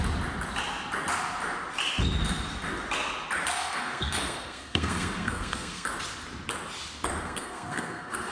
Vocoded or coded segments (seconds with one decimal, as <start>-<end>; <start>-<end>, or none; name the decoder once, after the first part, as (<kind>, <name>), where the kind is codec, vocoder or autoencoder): 3.6-5.9 (codec, SNAC); 7.2-8.3